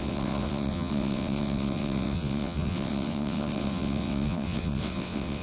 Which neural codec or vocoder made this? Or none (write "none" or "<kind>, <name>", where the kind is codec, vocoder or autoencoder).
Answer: vocoder, WaveNeXt